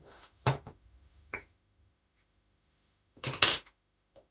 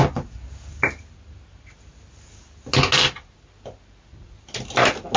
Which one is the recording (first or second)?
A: second